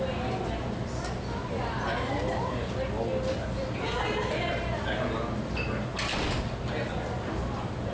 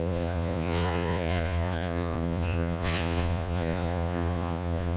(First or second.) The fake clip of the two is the second